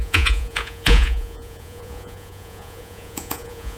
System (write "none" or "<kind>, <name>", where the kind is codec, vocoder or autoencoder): vocoder, Vocos